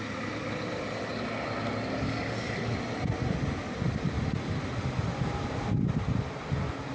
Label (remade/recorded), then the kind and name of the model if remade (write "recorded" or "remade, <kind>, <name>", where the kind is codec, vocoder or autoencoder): recorded